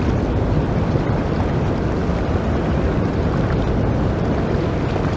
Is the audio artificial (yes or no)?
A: no